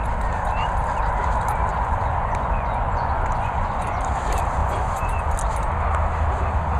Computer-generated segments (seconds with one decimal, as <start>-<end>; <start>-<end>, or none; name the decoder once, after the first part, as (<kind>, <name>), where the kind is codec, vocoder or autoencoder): 1.7-4.0 (vocoder, Vocos); 4.6-5.3